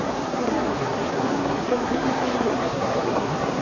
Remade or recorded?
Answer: remade